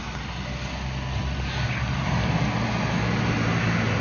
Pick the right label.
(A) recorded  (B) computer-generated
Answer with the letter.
A